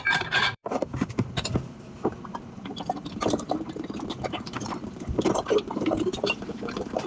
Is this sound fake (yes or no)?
yes